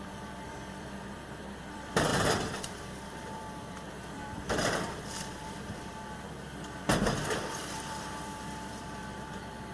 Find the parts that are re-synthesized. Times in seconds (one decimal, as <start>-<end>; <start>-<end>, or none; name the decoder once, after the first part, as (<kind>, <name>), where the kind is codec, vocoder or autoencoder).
0.0-9.7 (vocoder, BigVGAN v2)